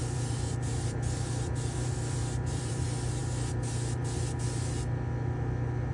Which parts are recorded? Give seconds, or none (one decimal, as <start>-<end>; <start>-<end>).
2.8-5.9

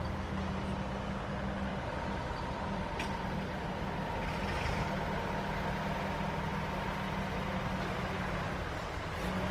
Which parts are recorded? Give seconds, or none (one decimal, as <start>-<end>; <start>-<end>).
0.0-1.7; 4.2-9.5

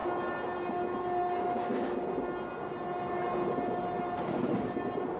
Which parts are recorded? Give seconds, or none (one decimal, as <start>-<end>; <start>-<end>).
0.0-5.2

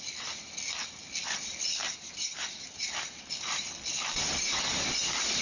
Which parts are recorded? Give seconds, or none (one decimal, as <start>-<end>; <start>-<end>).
0.0-1.8; 3.7-5.4

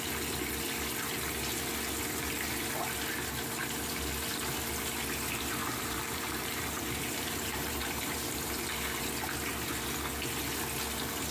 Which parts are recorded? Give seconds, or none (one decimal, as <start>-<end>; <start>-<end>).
0.0-5.6; 8.6-11.3

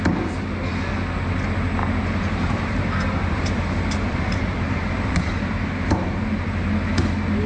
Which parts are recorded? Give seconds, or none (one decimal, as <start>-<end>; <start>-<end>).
0.0-1.8; 6.2-7.5